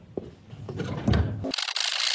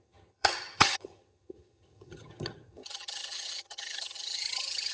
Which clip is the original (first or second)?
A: first